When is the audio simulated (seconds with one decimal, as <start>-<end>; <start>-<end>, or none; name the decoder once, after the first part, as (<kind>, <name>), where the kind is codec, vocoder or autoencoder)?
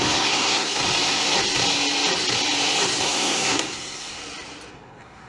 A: 0.0-0.8 (codec, SNAC); 3.0-4.2; 4.7-5.3